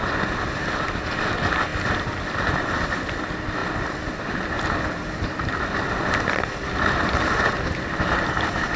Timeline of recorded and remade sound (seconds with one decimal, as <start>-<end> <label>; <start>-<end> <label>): 0.0-8.8 recorded